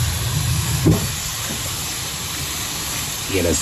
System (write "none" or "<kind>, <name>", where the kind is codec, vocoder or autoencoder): none